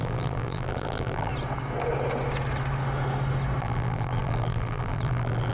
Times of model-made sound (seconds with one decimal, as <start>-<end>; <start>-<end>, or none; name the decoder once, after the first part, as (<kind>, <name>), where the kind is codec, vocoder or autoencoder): 0.0-1.3 (vocoder, BigVGAN v2); 3.6-5.5